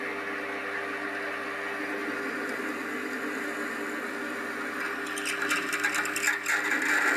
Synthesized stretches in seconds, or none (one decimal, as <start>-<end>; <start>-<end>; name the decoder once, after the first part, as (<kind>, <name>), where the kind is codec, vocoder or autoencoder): none